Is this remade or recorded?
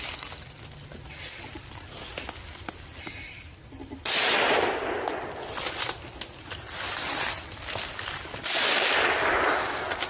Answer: recorded